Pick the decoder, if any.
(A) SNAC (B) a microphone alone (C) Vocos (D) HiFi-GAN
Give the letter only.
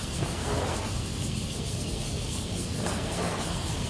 A